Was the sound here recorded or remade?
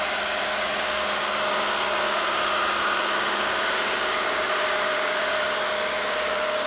remade